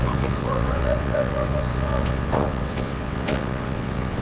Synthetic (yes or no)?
yes